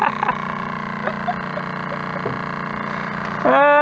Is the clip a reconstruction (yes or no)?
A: no